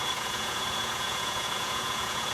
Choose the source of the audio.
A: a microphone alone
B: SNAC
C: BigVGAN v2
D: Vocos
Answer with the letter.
D